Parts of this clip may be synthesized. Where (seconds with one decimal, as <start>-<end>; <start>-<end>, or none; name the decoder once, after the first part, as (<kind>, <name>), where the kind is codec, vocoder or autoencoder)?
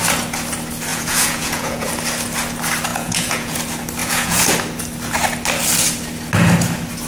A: 0.9-1.9 (vocoder, Vocos); 2.9-3.6; 4.0-4.5